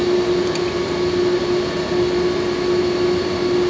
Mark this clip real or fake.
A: real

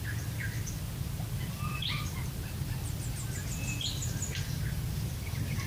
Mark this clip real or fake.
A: real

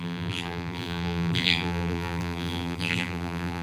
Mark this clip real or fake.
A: fake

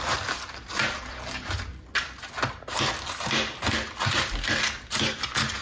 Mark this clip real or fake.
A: real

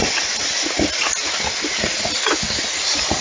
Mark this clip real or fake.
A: real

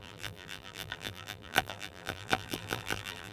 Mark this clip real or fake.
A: fake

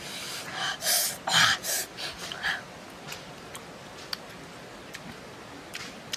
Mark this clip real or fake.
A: real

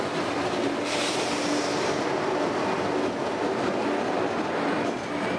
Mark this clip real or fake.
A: real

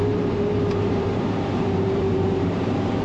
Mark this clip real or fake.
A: fake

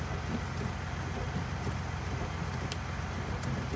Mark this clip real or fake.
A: real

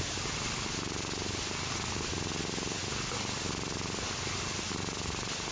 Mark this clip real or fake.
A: real